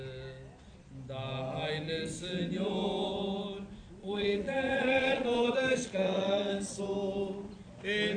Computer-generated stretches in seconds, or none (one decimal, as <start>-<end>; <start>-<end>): 4.0-6.8